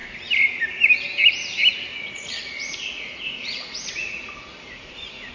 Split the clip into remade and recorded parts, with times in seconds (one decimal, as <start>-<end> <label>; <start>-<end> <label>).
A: 0.0-1.9 recorded; 1.9-5.3 remade

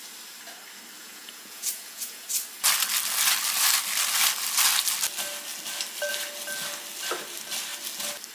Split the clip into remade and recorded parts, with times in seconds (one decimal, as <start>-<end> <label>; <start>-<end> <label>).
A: 0.0-1.0 recorded; 1.0-2.2 remade; 2.2-8.3 recorded

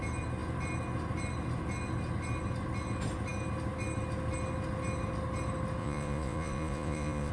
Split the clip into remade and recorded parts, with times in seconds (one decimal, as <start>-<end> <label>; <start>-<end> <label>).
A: 0.0-5.8 recorded; 5.8-7.3 remade

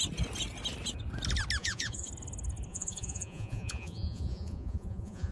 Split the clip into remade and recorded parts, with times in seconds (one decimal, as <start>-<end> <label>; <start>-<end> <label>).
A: 0.0-1.6 recorded; 1.6-2.1 remade; 2.1-2.7 recorded; 2.7-5.3 remade